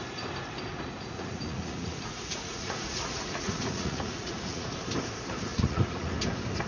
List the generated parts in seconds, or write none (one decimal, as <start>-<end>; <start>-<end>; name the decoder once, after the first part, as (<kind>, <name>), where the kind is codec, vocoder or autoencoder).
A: 0.7-4.7 (vocoder, Vocos); 5.5-6.1